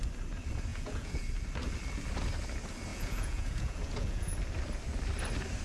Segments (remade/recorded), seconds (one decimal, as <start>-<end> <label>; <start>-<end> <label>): 0.0-0.7 recorded; 0.7-1.2 remade; 1.2-2.9 recorded; 2.9-4.3 remade; 4.3-5.6 recorded

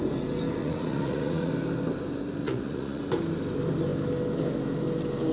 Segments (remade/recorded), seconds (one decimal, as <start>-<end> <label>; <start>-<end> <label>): 0.0-0.6 recorded; 0.6-1.5 remade; 1.5-2.4 recorded; 2.4-3.0 remade; 3.0-5.3 recorded